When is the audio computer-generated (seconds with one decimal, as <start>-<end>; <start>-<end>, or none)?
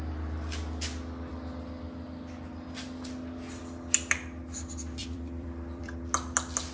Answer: 5.0-6.0